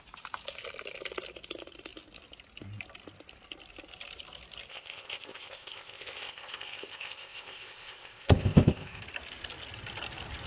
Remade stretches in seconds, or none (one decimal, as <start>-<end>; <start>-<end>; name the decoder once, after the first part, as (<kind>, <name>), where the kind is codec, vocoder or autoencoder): 4.7-9.0 (codec, ZipCodec)